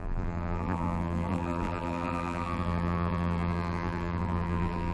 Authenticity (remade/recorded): remade